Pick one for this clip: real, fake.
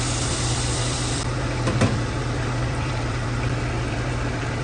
fake